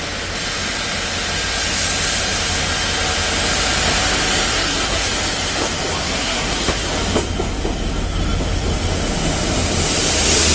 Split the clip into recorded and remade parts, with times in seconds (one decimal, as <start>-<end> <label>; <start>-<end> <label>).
0.0-4.5 recorded; 4.5-5.1 remade; 5.1-6.0 recorded; 6.0-6.9 remade; 6.9-10.5 recorded